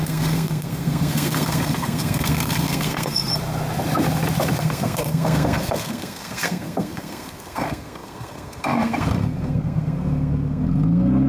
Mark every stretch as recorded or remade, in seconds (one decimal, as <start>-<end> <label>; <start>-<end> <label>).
0.0-3.3 remade; 3.3-4.6 recorded; 4.6-11.3 remade